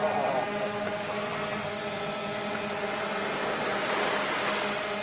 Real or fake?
real